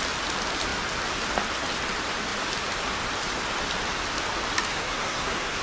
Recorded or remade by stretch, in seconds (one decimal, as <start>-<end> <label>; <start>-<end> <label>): 0.0-4.7 recorded; 4.7-5.6 remade